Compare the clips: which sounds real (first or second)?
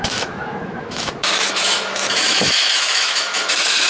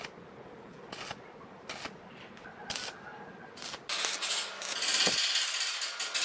second